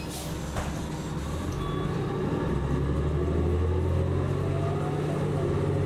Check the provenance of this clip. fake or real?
real